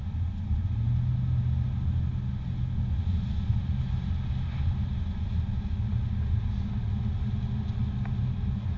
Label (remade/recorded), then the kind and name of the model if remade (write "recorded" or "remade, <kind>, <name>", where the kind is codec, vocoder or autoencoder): recorded